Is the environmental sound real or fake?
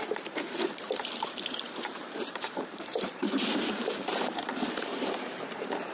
fake